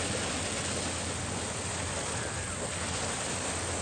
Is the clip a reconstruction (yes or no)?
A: no